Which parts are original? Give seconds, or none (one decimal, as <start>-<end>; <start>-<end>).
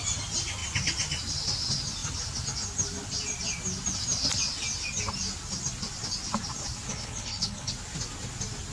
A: 0.0-6.9; 7.7-8.7